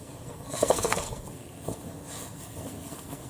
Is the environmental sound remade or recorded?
remade